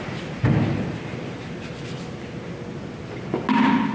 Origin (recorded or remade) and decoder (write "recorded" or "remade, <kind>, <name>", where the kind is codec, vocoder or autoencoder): recorded